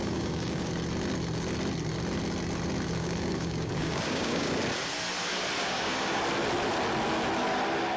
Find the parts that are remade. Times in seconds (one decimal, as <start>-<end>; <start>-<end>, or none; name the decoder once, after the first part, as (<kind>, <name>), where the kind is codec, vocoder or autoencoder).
0.0-0.7 (codec, DAC); 3.0-4.6; 5.6-6.2